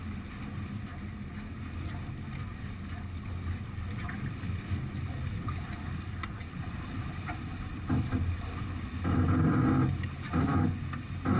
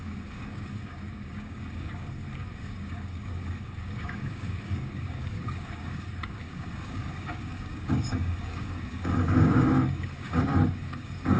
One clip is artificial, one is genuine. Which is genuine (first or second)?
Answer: first